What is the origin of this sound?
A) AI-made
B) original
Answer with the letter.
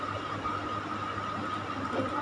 B